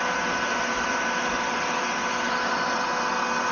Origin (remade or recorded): recorded